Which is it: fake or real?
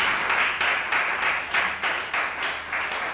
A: real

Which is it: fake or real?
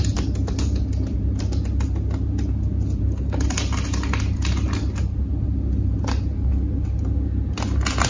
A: real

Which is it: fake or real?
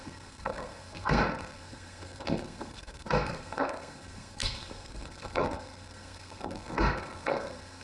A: fake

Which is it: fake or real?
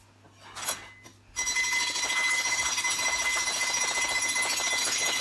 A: real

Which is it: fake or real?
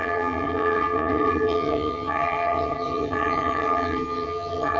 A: fake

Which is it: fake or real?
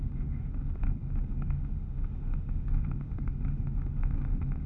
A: fake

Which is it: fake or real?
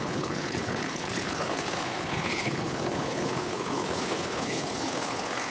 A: fake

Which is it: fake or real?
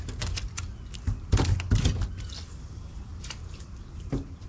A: real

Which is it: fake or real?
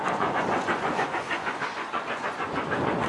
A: fake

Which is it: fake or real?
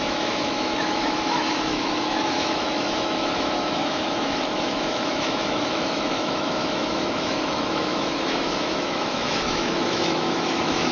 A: fake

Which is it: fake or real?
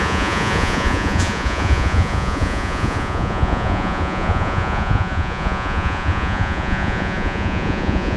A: fake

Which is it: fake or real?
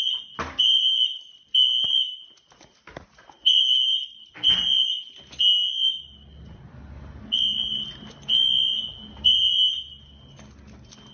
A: real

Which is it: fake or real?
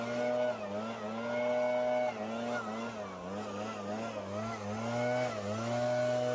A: real